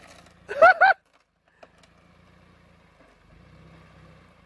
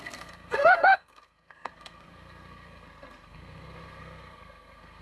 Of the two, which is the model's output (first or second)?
second